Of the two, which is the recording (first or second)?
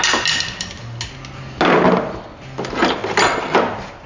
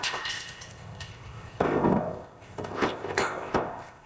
first